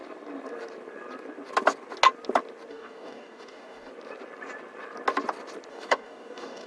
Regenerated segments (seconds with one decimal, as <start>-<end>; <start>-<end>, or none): 2.7-3.9; 5.7-6.7